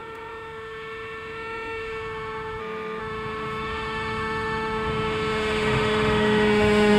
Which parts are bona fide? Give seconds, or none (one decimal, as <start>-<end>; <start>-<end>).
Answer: 2.6-3.0